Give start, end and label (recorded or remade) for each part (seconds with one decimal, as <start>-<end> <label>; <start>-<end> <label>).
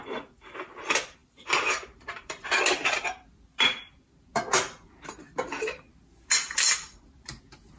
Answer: 0.0-1.2 recorded; 1.2-2.5 remade; 2.5-7.8 recorded